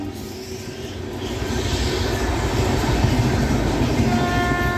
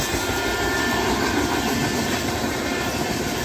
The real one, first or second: first